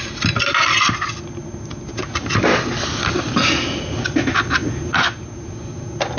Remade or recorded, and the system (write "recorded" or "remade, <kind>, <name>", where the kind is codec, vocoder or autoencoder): recorded